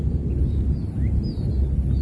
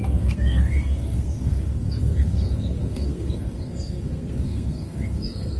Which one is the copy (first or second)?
second